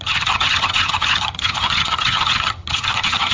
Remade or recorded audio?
remade